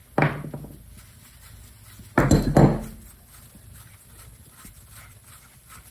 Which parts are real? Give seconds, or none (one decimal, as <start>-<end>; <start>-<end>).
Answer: 0.0-3.5